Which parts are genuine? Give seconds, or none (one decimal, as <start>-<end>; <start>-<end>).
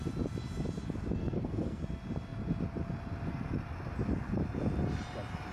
0.0-1.2; 1.8-5.5